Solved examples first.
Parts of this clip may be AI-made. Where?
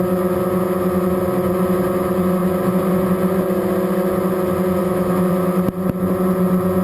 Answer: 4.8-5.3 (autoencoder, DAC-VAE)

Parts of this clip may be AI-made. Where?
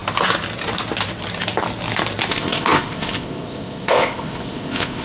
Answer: 2.3-5.0 (codec, ZipCodec)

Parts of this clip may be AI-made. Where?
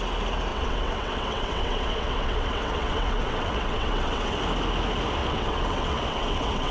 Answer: 0.5-4.4 (vocoder, WaveNeXt); 5.2-6.7